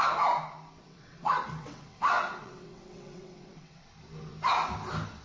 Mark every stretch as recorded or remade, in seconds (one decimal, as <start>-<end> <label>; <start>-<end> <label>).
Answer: 0.0-0.8 recorded; 0.8-3.9 remade; 3.9-5.2 recorded